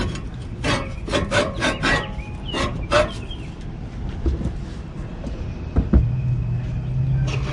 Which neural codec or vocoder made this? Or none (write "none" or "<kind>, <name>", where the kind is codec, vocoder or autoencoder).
none